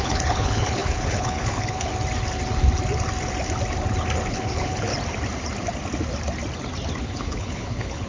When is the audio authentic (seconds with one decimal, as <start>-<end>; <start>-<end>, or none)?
1.9-4.3; 4.9-7.0